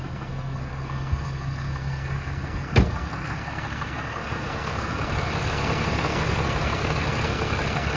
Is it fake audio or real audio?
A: fake